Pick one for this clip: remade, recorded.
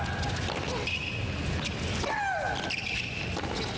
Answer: recorded